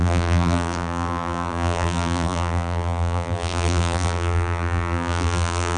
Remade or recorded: remade